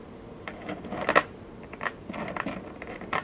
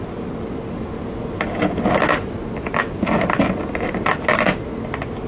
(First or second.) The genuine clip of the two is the second